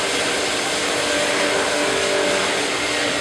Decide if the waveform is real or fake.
real